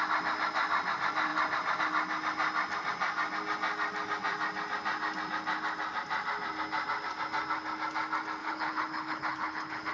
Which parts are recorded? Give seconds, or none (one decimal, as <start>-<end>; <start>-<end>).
0.0-8.4